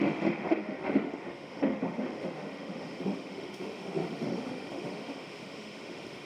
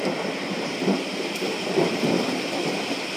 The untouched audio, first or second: second